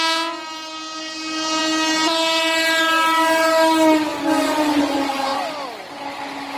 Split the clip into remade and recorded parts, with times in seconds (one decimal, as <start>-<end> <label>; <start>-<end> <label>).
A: 0.0-6.6 recorded